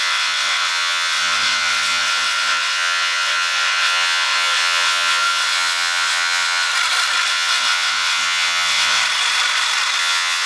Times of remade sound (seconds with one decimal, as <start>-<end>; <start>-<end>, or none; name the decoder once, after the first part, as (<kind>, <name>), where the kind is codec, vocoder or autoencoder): 0.0-6.7 (vocoder, WaveNeXt); 7.3-9.0; 10.0-10.5

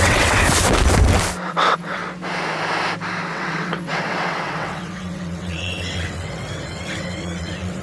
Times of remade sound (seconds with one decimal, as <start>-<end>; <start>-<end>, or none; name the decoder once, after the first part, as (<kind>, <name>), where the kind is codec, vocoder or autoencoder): 0.0-0.4 (vocoder, WaveNeXt); 1.5-2.0; 3.3-7.8

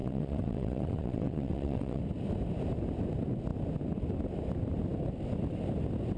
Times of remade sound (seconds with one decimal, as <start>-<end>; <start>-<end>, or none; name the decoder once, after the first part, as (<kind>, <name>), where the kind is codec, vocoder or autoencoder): 0.0-2.0 (vocoder, WaveNeXt)

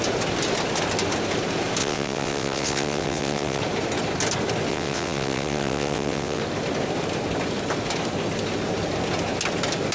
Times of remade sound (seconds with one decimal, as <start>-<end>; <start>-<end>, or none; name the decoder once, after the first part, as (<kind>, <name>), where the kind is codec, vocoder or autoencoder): 1.8-3.6 (vocoder, WaveNeXt); 4.7-6.4